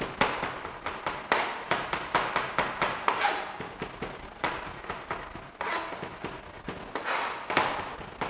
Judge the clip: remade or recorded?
recorded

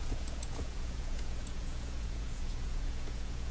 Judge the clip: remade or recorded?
remade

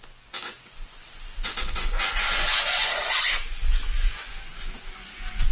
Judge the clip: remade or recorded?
remade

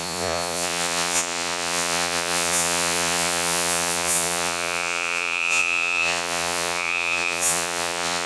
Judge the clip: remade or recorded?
remade